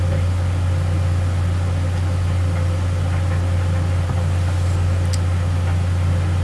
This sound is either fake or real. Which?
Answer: real